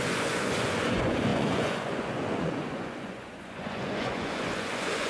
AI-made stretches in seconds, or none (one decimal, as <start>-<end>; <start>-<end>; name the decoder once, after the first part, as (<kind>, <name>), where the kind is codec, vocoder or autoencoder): 0.0-5.1 (vocoder, Vocos)

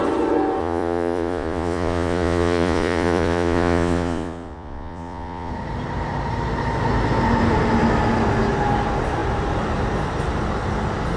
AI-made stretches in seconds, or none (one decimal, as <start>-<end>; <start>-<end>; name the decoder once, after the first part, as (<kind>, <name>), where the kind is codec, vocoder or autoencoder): 0.6-5.5 (vocoder, Vocos)

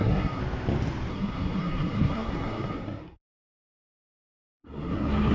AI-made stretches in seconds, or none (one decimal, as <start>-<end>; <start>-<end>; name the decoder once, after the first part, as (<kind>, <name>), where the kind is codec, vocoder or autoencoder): 0.0-0.4 (codec, SNAC); 1.1-5.3

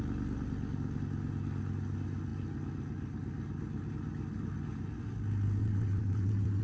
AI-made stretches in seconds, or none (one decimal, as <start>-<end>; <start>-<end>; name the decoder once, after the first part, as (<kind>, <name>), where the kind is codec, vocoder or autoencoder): 5.6-6.6 (vocoder, WaveNeXt)

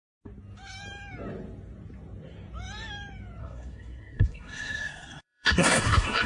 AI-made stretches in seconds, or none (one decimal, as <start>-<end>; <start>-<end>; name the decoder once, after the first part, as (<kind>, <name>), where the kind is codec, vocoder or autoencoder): 3.4-6.3 (codec, SNAC)